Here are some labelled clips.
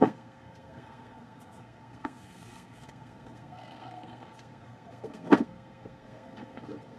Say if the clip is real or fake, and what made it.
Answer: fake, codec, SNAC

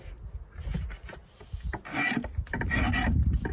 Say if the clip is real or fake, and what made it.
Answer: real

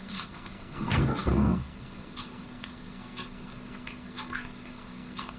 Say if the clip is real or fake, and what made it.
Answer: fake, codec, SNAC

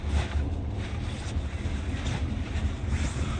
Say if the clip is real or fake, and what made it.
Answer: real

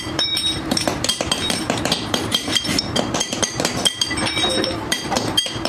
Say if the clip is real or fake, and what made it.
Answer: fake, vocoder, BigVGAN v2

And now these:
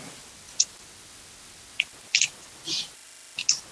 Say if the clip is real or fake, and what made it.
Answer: real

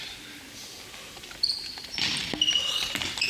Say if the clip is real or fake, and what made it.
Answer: real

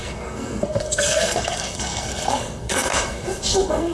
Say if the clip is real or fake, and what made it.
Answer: fake, codec, SNAC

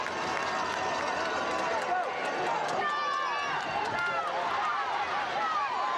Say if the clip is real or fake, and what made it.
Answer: real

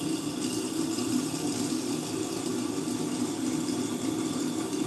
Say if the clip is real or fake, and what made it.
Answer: real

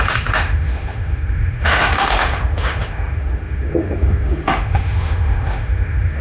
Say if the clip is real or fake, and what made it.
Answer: fake, autoencoder, DAC-VAE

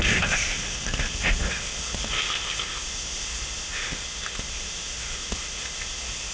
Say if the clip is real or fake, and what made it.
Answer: fake, codec, ZipCodec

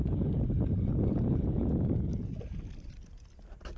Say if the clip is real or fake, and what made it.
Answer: real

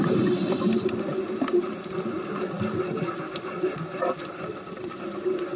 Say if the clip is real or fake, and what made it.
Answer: real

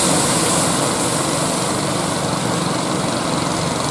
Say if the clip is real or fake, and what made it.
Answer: real